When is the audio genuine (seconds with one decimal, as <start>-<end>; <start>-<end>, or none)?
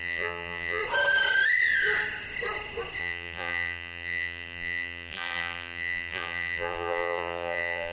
0.8-3.0